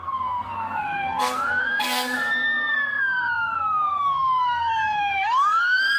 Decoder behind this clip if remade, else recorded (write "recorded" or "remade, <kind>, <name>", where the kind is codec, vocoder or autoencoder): remade, codec, SNAC